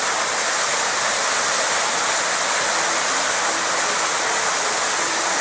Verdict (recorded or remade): recorded